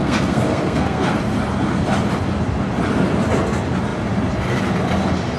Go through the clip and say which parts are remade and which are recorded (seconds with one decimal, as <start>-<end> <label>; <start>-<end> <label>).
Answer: 0.0-1.2 remade; 1.2-5.4 recorded